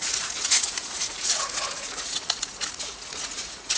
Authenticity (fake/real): fake